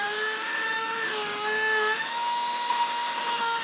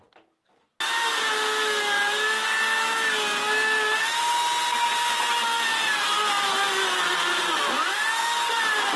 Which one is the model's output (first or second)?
first